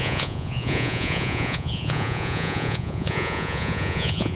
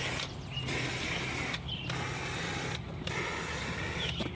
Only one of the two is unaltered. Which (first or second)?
second